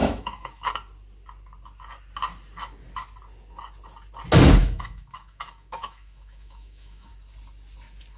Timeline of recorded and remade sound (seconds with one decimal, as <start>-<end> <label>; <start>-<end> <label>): 0.0-0.7 remade; 0.7-4.6 recorded; 4.6-7.1 remade; 7.1-8.2 recorded